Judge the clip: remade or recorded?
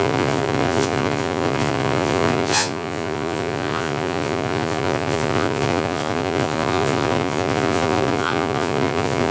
remade